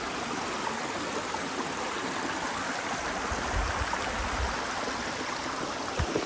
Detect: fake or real real